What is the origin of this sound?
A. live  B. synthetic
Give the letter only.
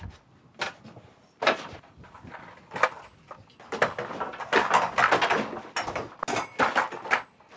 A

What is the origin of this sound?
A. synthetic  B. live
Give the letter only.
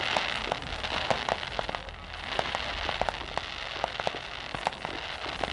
B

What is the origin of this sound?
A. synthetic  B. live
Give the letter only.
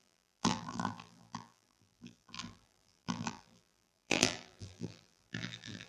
A